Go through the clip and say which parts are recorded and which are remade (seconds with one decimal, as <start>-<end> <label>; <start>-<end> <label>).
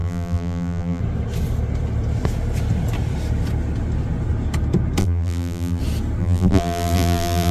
0.0-1.0 remade; 1.0-5.0 recorded; 5.0-5.8 remade; 5.8-6.2 recorded; 6.2-7.5 remade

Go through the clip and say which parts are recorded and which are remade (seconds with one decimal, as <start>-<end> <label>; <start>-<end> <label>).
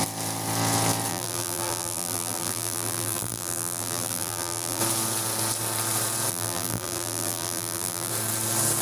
0.0-1.1 recorded; 1.1-4.8 remade; 4.8-6.3 recorded; 6.3-8.1 remade; 8.1-8.8 recorded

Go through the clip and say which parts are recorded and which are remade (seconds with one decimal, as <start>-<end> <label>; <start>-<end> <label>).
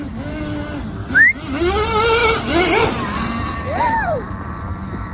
0.0-2.2 recorded; 2.2-5.1 remade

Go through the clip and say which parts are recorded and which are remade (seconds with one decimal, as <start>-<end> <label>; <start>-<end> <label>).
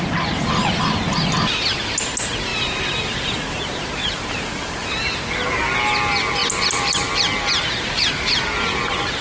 0.0-2.5 recorded; 2.5-3.6 remade; 3.6-4.0 recorded; 4.0-5.0 remade; 5.0-9.2 recorded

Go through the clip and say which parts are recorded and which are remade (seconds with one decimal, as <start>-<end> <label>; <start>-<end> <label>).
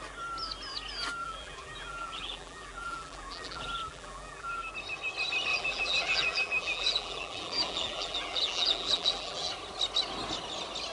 0.0-1.2 recorded; 1.2-4.7 remade; 4.7-5.5 recorded; 5.5-9.5 remade; 9.5-10.9 recorded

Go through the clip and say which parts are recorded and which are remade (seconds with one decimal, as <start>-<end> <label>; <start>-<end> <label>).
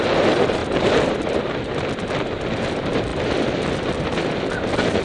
0.0-0.6 recorded; 0.6-1.4 remade; 1.4-5.0 recorded